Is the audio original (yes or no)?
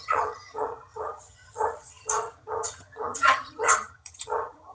no